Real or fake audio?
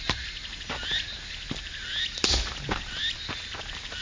real